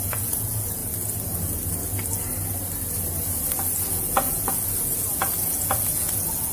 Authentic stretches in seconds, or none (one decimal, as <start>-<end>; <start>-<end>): 0.8-3.8